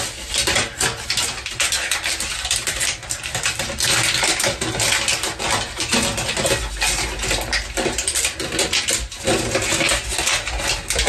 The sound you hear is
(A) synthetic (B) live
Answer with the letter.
B